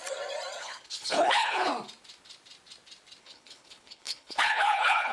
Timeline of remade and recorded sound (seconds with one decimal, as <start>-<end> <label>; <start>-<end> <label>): 0.0-0.6 recorded; 0.6-1.7 remade; 1.7-3.2 recorded; 3.2-5.1 remade